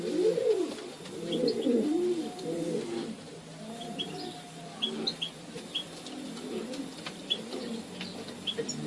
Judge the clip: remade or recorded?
recorded